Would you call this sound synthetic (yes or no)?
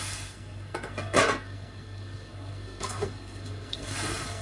yes